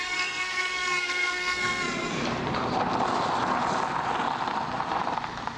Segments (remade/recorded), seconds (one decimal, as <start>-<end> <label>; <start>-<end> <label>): 0.0-2.2 remade; 2.2-5.6 recorded